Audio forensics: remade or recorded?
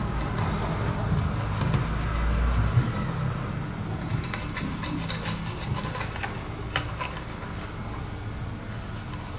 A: recorded